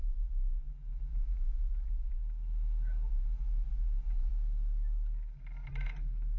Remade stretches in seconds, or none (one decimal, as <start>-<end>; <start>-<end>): 0.0-2.2; 3.1-4.3